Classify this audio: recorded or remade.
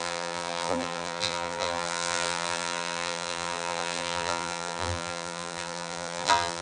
remade